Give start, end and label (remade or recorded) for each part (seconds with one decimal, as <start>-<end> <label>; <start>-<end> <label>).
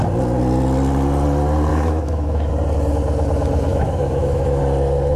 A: 0.0-1.7 recorded; 1.7-2.5 remade; 2.5-3.7 recorded; 3.7-4.6 remade; 4.6-5.2 recorded